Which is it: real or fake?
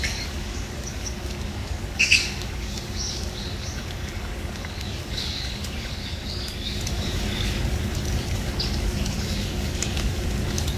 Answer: fake